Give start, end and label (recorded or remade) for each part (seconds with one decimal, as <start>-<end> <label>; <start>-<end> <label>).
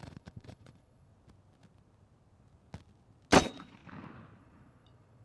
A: 0.0-1.1 remade; 1.1-3.4 recorded; 3.4-3.8 remade; 3.8-4.4 recorded; 4.4-5.2 remade